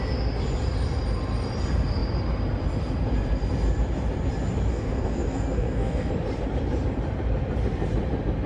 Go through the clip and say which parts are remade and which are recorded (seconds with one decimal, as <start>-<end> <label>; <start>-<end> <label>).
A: 0.0-4.7 recorded; 4.7-6.1 remade; 6.1-8.5 recorded